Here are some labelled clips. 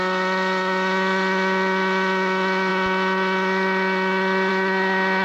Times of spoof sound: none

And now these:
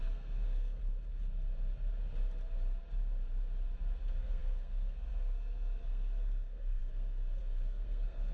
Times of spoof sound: 0.0-0.8 (codec, SNAC); 4.0-8.3

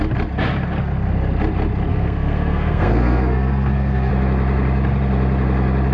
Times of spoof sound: 1.9-4.1 (codec, SNAC)

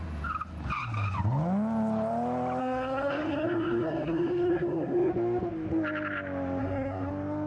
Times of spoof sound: 2.6-5.1 (codec, SNAC); 6.6-7.1

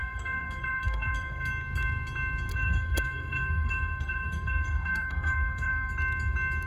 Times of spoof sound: 0.0-1.5 (codec, SNAC); 2.5-5.9

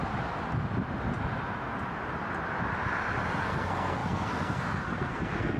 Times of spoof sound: 3.4-5.6 (codec, SNAC)